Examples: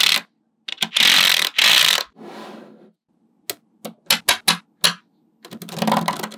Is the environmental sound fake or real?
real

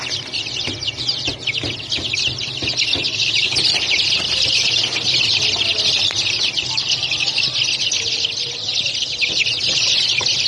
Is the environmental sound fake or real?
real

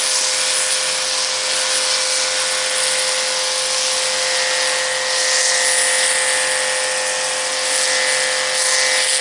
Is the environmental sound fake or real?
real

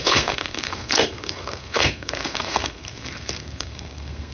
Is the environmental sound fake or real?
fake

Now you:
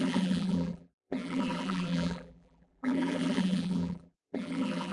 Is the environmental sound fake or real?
fake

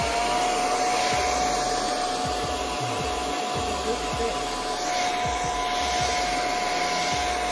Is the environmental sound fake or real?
real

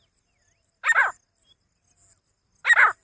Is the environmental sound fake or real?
real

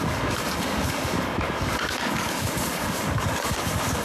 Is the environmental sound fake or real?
fake